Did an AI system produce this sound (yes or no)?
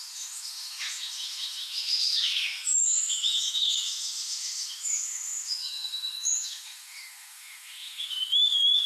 yes